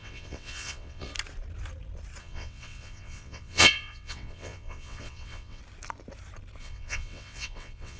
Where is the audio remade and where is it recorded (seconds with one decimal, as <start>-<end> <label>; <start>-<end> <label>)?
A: 0.0-1.1 remade; 1.1-2.2 recorded; 2.2-5.6 remade; 5.6-6.6 recorded; 6.6-8.0 remade